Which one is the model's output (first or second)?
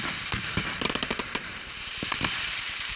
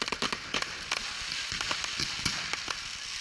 first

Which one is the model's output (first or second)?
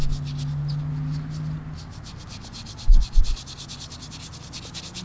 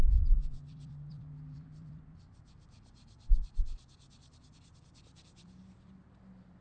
second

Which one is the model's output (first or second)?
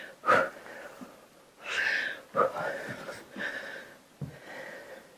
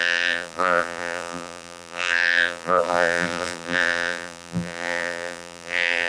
second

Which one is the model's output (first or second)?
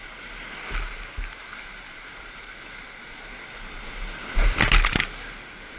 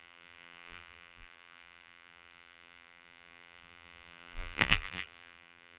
second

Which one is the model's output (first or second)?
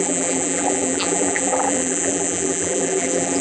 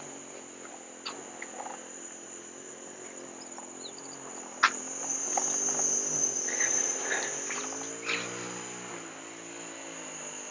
first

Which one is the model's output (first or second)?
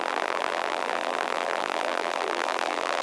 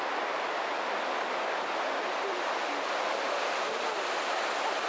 first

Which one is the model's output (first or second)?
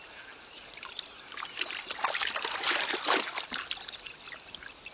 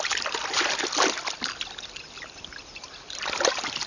second